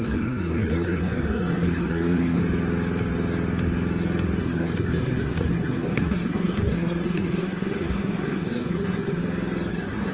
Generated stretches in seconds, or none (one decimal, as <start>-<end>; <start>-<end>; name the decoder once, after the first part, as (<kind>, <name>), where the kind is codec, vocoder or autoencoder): 0.0-2.4 (codec, SNAC); 4.4-9.2; 9.7-10.1